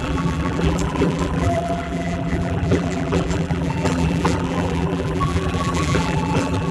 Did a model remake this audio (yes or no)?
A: yes